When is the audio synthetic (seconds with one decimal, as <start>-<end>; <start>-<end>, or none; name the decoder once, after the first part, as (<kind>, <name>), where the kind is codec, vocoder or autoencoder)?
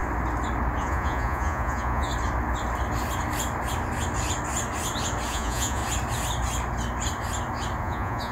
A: 0.8-2.1 (vocoder, Vocos); 5.3-5.8; 7.8-8.3